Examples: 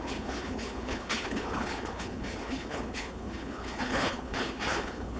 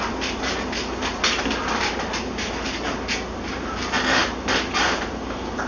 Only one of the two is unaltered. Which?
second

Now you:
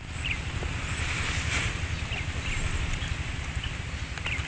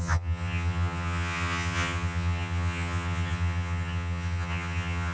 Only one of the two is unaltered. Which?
first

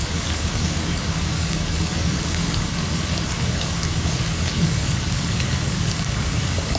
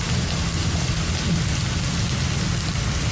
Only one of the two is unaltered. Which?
second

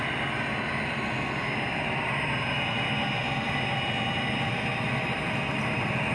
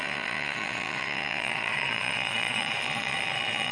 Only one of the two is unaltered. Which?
first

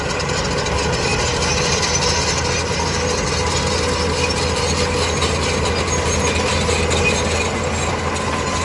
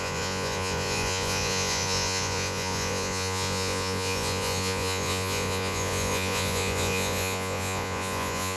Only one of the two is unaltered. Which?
first